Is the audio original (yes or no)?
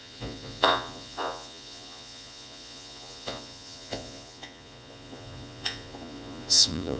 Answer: no